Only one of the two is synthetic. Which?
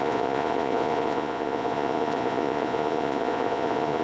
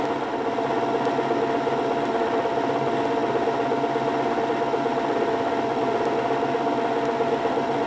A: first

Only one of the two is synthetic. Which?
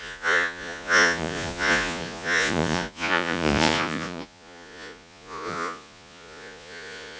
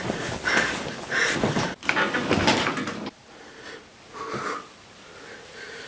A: first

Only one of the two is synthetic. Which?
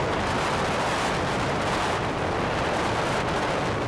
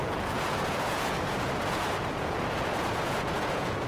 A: second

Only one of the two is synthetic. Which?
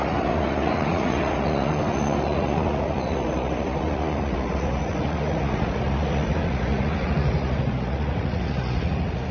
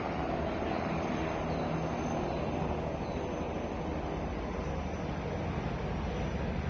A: first